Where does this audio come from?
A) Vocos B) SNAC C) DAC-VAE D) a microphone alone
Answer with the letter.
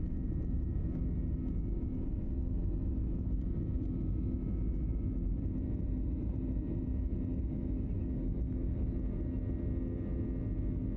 D